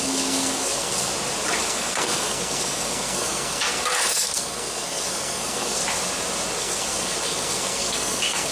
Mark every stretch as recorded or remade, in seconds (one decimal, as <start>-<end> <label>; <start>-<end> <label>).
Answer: 0.0-1.1 remade; 1.1-1.6 recorded; 1.6-5.8 remade; 5.8-6.6 recorded; 6.6-8.5 remade